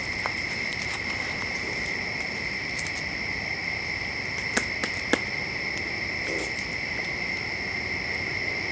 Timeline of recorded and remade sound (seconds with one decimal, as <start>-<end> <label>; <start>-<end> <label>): 0.0-0.7 recorded; 0.7-1.7 remade; 1.7-8.7 recorded